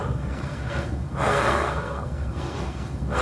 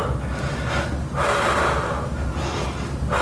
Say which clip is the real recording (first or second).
second